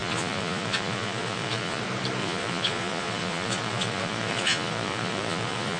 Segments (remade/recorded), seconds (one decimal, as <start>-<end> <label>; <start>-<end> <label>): 0.0-1.8 remade; 1.8-2.2 recorded; 2.2-5.8 remade